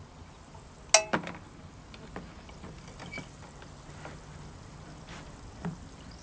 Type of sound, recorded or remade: recorded